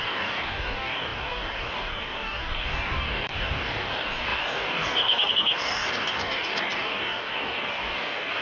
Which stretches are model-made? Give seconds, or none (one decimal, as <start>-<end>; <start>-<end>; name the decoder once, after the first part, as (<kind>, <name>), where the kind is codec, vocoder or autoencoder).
0.0-8.4 (codec, DAC)